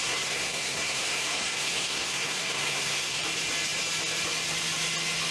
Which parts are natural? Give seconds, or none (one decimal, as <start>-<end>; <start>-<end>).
3.2-5.3